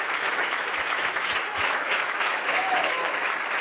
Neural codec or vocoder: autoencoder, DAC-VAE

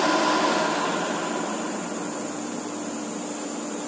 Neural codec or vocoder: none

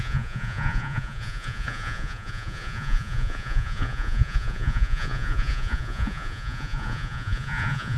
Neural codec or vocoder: vocoder, Vocos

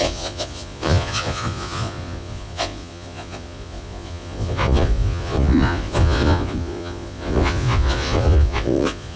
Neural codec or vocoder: vocoder, Vocos